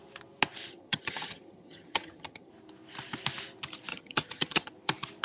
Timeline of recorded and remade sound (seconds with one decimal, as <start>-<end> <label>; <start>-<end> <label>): 0.0-0.7 recorded; 0.7-2.5 remade; 2.5-3.9 recorded; 3.9-4.7 remade; 4.7-5.2 recorded